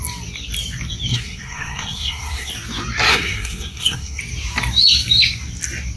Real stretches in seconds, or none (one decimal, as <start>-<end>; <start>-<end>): 0.0-1.1; 2.5-3.1; 4.2-6.0